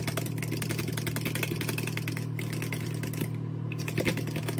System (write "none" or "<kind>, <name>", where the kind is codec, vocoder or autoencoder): none